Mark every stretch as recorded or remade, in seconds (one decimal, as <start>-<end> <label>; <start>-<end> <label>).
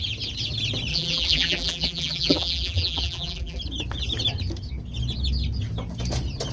0.0-0.9 recorded; 0.9-3.6 remade; 3.6-6.5 recorded